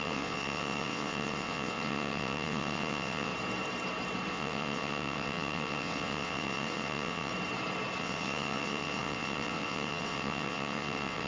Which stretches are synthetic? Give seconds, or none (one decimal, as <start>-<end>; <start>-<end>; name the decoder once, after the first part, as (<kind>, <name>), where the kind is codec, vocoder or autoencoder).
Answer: 0.0-3.3 (vocoder, WaveNeXt); 4.3-7.3; 8.0-11.3